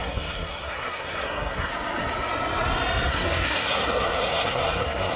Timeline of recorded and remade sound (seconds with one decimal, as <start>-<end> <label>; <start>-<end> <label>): 0.0-1.7 remade; 1.7-3.1 recorded; 3.1-5.2 remade